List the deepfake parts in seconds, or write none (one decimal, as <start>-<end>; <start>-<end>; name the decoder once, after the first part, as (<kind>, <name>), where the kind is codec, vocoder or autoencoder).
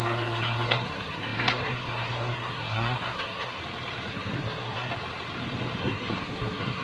0.0-3.6 (codec, SNAC); 4.1-4.9; 5.8-6.8